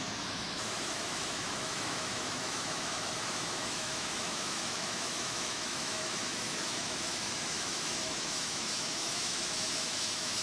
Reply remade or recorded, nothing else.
remade